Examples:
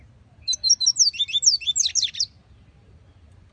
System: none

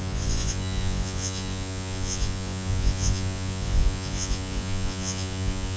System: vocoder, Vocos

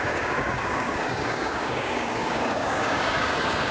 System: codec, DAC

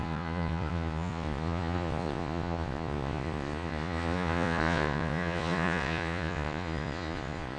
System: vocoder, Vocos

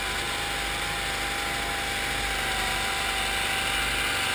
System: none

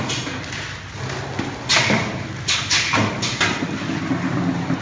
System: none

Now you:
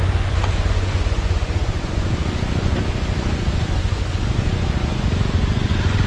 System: vocoder, Vocos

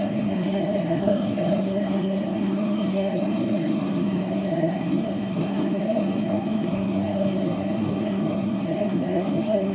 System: codec, SNAC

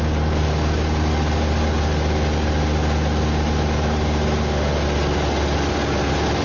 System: none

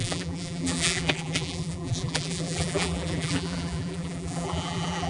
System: vocoder, BigVGAN v2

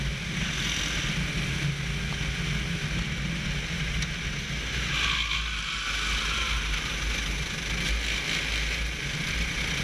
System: none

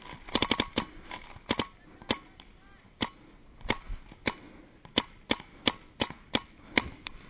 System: none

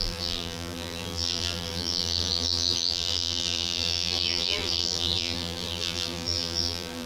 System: vocoder, BigVGAN v2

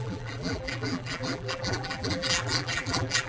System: vocoder, BigVGAN v2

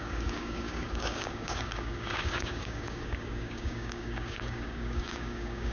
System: codec, DAC